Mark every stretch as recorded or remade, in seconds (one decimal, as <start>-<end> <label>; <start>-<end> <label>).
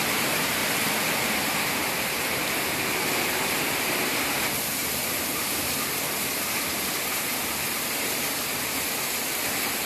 0.0-0.6 remade; 0.6-1.9 recorded; 1.9-9.9 remade